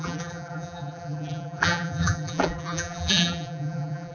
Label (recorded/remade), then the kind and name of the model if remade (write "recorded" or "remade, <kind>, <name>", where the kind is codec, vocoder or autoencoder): remade, vocoder, BigVGAN v2